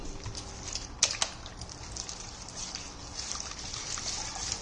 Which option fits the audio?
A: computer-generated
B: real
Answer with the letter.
B